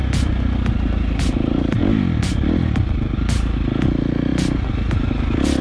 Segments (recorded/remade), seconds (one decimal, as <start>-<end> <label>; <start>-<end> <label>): 0.0-5.6 recorded